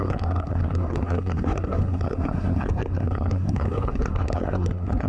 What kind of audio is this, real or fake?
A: fake